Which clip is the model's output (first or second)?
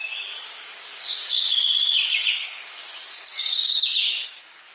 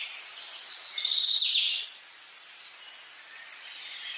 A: first